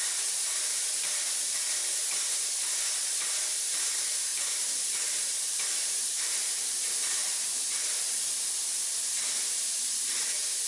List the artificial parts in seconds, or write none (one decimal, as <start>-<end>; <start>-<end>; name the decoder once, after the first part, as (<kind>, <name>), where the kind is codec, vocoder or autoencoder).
0.0-10.7 (vocoder, BigVGAN v2)